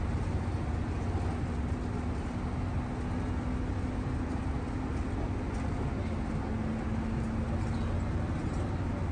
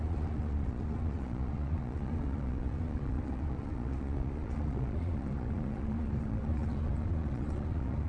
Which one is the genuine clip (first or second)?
first